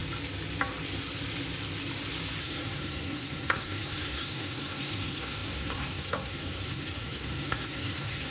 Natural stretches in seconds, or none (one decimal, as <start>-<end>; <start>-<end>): 0.0-2.4